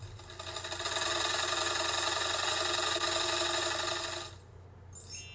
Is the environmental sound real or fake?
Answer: real